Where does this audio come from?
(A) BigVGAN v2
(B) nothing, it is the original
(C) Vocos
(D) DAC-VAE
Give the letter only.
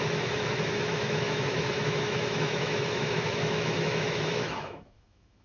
D